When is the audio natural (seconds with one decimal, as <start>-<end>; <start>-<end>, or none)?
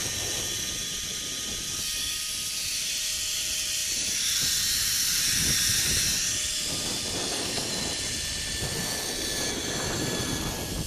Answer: 0.0-7.2; 7.7-10.9